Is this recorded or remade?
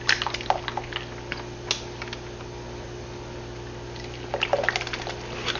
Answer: recorded